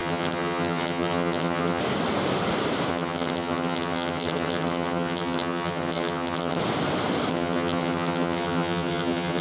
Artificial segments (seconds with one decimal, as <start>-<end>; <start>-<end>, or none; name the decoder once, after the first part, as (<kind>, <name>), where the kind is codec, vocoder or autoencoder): 0.0-1.8 (vocoder, HiFi-GAN); 2.9-6.6; 7.3-9.4